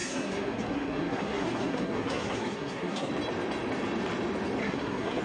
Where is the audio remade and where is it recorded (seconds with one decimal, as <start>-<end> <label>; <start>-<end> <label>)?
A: 0.0-3.1 remade; 3.1-4.6 recorded; 4.6-5.2 remade